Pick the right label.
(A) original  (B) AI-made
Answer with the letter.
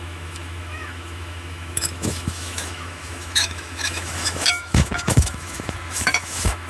B